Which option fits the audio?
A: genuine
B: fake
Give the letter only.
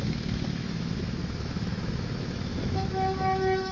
B